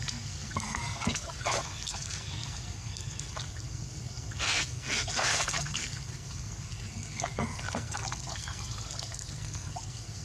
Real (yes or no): no